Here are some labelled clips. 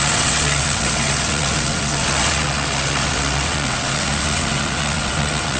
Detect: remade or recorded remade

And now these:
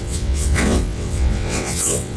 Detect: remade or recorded remade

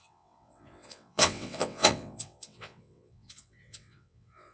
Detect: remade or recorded remade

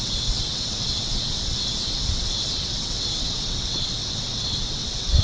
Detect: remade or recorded remade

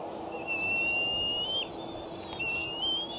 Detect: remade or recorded recorded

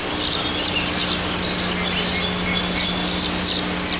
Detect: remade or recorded recorded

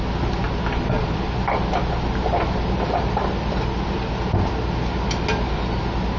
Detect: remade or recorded recorded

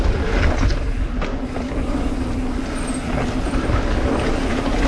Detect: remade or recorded recorded